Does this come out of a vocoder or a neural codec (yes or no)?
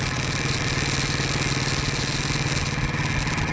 no